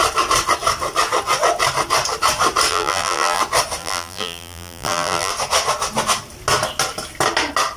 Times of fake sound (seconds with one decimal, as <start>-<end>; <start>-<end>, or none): 2.7-3.4; 3.8-5.3